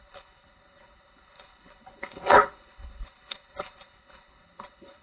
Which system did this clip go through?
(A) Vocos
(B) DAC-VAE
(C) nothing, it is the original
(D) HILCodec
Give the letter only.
D